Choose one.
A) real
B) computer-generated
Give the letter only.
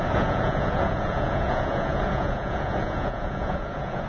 B